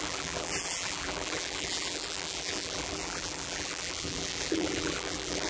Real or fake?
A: fake